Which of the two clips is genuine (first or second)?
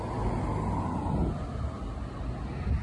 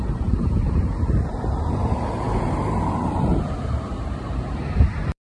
first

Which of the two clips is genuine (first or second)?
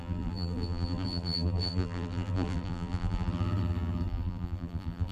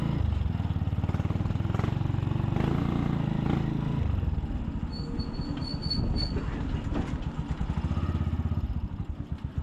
second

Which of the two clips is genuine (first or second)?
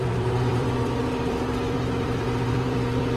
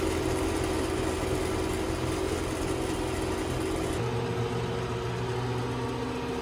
second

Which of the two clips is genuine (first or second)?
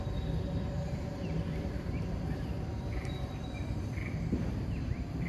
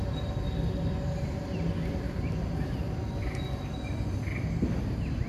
second